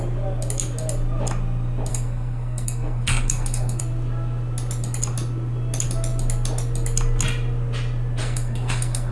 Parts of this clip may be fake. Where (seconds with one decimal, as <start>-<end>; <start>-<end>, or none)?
1.9-3.8; 8.2-9.1